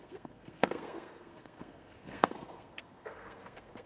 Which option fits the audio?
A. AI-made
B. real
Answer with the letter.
A